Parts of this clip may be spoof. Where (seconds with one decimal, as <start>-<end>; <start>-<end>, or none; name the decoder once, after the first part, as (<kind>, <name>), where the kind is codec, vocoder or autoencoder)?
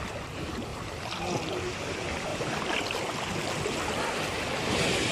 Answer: none